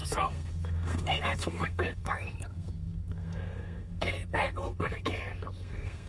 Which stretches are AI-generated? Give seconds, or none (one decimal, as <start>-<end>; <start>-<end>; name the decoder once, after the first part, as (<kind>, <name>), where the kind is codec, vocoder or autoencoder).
0.0-6.1 (codec, SNAC)